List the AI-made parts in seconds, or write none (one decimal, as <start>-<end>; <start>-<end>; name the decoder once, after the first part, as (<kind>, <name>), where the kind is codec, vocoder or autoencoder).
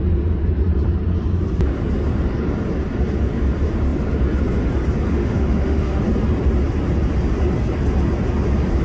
5.1-6.0 (autoencoder, DAC-VAE)